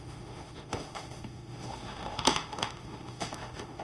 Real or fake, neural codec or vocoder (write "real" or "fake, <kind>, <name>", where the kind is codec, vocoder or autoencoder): fake, autoencoder, DAC-VAE